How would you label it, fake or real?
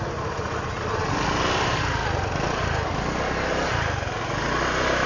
real